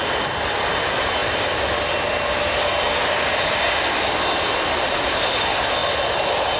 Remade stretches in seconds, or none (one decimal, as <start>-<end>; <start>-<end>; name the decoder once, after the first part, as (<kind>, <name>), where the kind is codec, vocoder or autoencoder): none